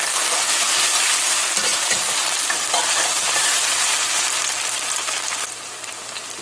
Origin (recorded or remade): recorded